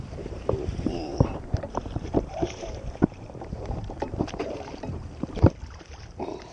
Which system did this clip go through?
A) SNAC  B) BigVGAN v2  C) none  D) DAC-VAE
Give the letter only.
B